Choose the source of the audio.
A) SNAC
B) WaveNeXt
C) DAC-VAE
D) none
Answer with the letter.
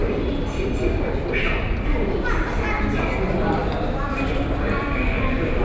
D